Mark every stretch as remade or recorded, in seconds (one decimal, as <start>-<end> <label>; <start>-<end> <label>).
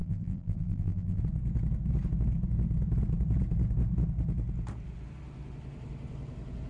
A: 0.0-1.2 remade; 1.2-6.7 recorded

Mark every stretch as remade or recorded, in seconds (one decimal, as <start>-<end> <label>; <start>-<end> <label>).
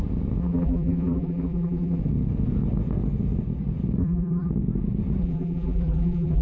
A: 0.0-0.4 recorded; 0.4-2.0 remade; 2.0-4.0 recorded; 4.0-4.5 remade; 4.5-5.2 recorded; 5.2-6.4 remade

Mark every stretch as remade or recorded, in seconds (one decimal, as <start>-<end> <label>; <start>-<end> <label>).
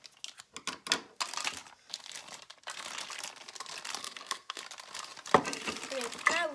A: 0.0-4.0 recorded; 4.0-4.6 remade; 4.6-6.5 recorded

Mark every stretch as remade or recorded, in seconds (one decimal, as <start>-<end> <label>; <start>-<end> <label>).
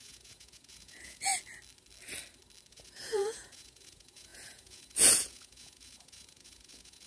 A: 0.0-1.3 remade; 1.3-2.7 recorded; 2.7-7.1 remade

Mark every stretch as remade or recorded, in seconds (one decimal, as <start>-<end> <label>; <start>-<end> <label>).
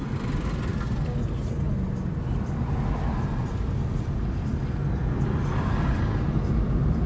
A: 0.0-7.1 recorded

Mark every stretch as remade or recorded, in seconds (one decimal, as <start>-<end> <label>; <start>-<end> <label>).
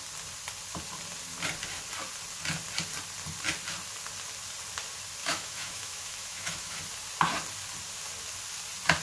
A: 0.0-5.2 recorded; 5.2-6.8 remade; 6.8-9.0 recorded